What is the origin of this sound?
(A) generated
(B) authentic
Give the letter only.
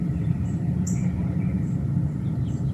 A